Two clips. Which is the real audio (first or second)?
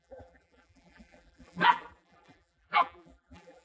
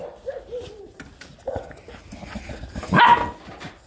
second